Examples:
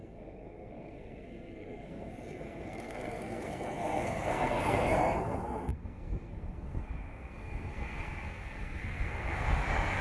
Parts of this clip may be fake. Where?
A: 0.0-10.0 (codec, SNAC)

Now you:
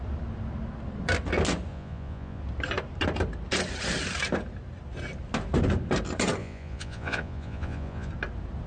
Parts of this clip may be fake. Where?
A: 1.7-2.4 (vocoder, Vocos); 6.4-8.1

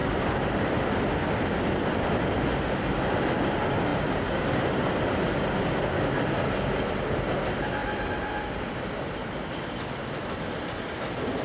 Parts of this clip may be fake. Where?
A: 0.0-1.7 (vocoder, BigVGAN v2); 7.8-9.1

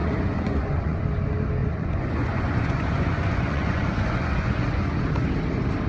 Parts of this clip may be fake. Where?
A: 0.0-1.0 (vocoder, Vocos); 1.6-5.0

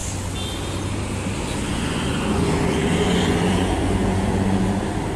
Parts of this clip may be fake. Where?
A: 1.7-4.8 (vocoder, Vocos)

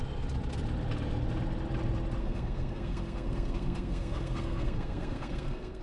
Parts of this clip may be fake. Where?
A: 2.2-5.8 (codec, SNAC)

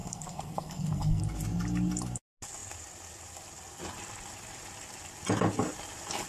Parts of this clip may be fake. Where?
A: 0.0-1.2 (codec, SNAC)